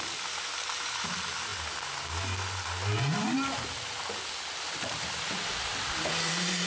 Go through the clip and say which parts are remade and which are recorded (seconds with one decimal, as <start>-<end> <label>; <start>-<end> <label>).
0.0-6.7 recorded